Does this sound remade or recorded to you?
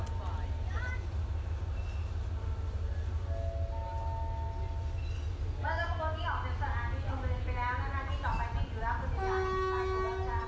recorded